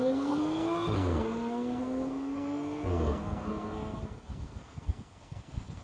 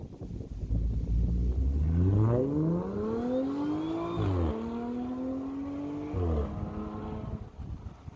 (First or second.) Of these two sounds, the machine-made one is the first